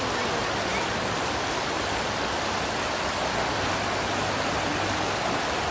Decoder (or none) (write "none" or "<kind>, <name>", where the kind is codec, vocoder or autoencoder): none